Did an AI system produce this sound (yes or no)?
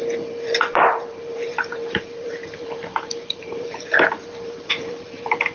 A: yes